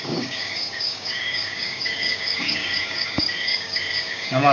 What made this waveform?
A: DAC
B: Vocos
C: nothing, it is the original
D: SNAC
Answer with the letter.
A